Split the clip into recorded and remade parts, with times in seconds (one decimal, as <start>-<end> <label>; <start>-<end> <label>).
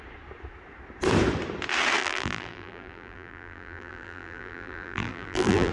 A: 0.0-2.0 recorded; 2.0-5.7 remade